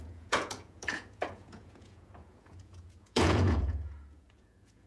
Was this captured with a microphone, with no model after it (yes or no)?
no